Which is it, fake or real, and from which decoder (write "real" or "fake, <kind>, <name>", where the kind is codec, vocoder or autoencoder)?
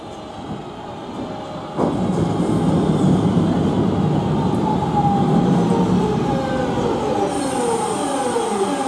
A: real